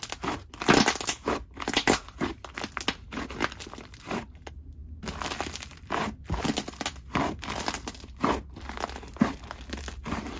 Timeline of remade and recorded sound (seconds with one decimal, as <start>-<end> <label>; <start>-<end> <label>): 0.0-10.4 recorded